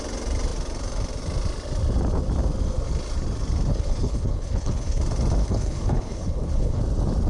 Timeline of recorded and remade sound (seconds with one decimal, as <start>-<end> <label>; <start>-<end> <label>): 0.0-3.7 recorded; 3.7-5.0 remade; 5.0-5.4 recorded; 5.4-6.8 remade; 6.8-7.3 recorded